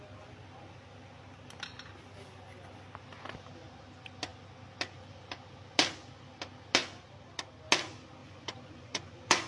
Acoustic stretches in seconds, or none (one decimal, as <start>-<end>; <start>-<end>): 0.0-8.2